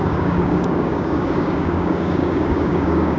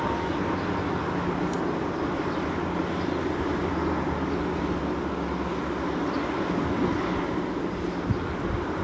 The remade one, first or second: first